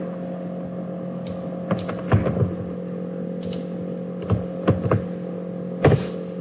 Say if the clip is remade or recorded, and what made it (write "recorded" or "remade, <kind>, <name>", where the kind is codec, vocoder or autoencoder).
recorded